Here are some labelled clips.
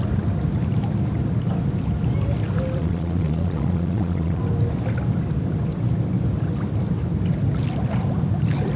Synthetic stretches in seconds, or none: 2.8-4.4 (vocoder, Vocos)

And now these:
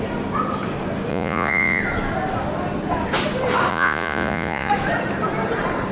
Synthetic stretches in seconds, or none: 1.1-1.8 (vocoder, Vocos); 3.7-4.7

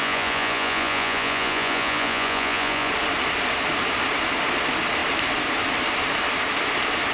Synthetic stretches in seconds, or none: 0.0-2.9 (vocoder, Vocos)